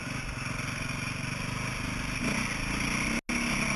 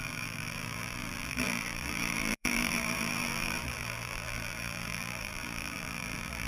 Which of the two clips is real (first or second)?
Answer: first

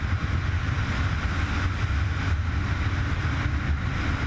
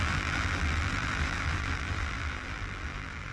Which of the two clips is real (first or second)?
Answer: first